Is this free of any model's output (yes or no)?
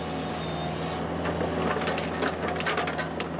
yes